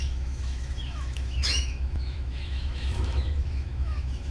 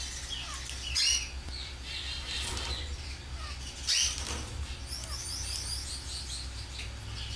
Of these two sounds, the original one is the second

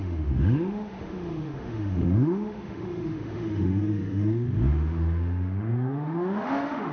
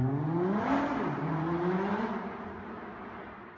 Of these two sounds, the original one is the second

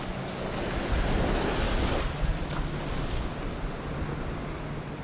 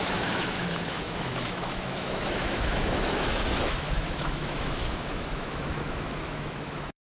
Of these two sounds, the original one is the first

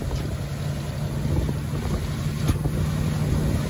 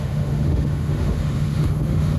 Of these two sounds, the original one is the first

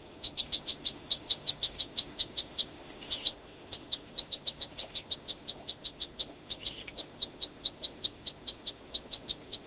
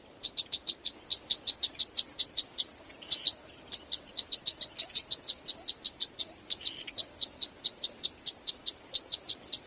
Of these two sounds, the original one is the second